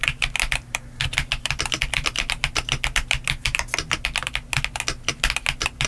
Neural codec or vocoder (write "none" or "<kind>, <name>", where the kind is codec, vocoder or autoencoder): none